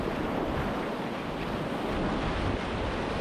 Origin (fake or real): real